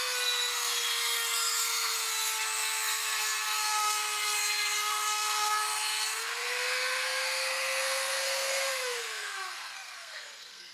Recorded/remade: remade